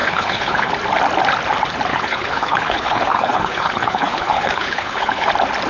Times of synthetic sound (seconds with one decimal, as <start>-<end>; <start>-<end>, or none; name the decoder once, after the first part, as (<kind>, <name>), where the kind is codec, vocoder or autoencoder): 0.0-0.7 (codec, HILCodec); 1.9-5.3

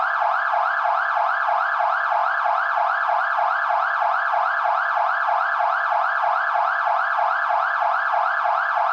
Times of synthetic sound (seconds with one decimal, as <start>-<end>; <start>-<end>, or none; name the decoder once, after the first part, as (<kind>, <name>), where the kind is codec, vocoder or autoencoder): none